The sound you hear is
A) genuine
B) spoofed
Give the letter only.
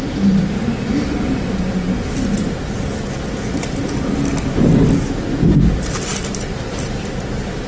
A